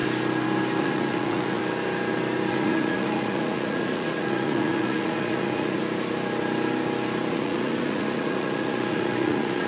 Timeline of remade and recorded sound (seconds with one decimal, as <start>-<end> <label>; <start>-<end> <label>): 0.0-0.8 recorded; 0.8-1.6 remade; 1.6-2.5 recorded; 2.5-5.8 remade; 5.8-7.3 recorded; 7.3-9.7 remade